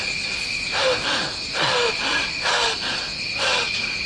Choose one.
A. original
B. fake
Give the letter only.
A